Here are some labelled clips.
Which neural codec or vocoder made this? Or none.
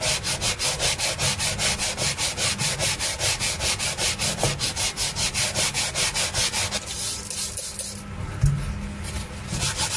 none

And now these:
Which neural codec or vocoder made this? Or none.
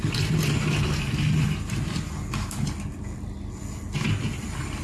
none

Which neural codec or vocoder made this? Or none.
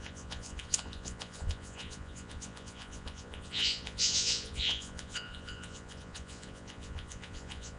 vocoder, Vocos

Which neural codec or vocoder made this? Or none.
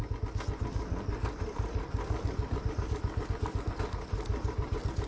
none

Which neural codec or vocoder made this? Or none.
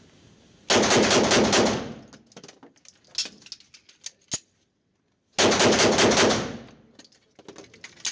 none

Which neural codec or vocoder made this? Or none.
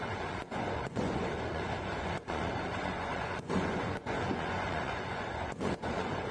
vocoder, Vocos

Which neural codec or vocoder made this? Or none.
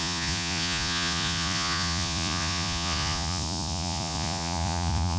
vocoder, Vocos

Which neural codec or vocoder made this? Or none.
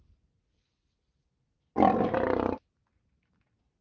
none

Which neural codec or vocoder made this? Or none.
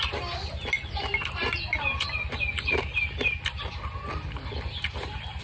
none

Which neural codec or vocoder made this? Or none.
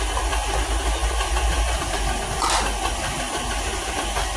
none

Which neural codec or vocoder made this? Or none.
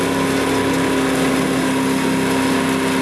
none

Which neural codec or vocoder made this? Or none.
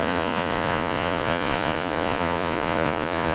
vocoder, Vocos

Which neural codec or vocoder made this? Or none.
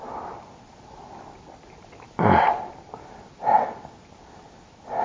none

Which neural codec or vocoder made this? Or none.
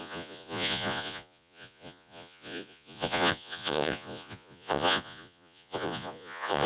vocoder, Vocos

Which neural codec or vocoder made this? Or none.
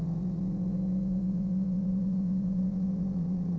vocoder, Vocos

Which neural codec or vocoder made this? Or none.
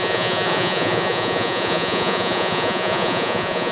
vocoder, Vocos